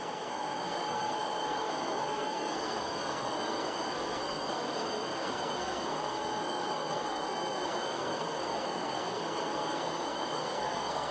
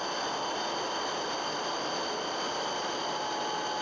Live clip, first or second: second